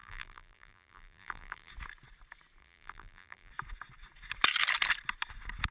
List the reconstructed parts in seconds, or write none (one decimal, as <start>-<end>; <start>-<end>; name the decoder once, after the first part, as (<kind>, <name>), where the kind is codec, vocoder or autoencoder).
0.0-1.7 (vocoder, BigVGAN v2); 2.6-3.5

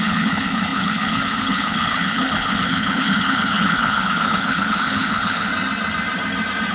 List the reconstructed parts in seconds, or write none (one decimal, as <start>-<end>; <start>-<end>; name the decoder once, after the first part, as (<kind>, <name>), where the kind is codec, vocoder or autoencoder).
0.0-5.5 (codec, HILCodec)

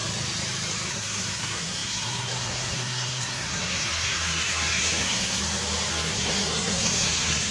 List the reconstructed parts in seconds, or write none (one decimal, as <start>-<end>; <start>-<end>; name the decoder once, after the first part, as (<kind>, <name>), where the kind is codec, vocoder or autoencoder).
0.9-5.4 (codec, SNAC); 5.9-7.5

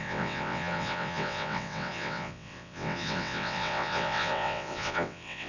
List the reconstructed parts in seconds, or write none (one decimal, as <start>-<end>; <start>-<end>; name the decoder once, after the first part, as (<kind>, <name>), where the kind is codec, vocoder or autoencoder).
0.0-5.5 (vocoder, WaveNeXt)